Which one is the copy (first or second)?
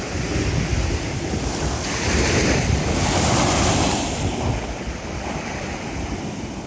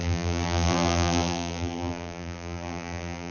second